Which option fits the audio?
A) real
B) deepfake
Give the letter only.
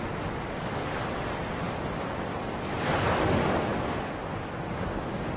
B